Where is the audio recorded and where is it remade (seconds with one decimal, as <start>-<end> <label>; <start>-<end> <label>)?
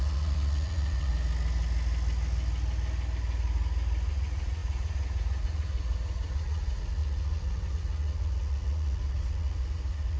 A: 0.0-1.1 remade; 1.1-4.1 recorded; 4.1-10.2 remade